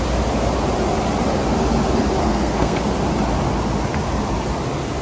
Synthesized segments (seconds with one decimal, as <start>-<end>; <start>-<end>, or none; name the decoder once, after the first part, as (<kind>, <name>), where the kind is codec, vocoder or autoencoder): 2.2-2.8 (codec, SNAC)

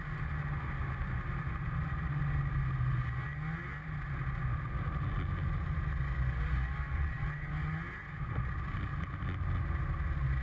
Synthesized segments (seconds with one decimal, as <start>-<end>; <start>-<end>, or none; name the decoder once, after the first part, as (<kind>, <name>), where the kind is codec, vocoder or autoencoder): 6.9-7.5 (vocoder, WaveNeXt)

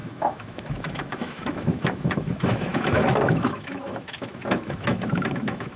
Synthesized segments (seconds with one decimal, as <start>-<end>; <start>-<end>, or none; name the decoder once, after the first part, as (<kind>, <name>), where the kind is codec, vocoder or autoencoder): 0.0-5.8 (autoencoder, DAC-VAE)

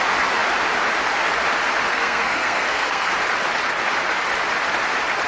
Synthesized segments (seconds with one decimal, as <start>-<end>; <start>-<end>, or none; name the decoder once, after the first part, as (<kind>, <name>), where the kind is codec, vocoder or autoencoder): 1.9-3.1 (codec, SNAC)

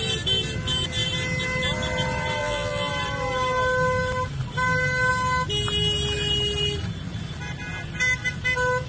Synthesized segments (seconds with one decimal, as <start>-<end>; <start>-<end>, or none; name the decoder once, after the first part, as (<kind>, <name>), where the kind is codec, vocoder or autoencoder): 2.4-2.9 (vocoder, BigVGAN v2)